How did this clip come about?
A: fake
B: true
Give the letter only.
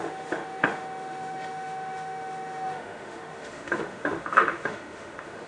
A